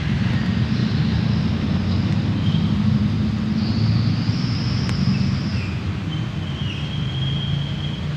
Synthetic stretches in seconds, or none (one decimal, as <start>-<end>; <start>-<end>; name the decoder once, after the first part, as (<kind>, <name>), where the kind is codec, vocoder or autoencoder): none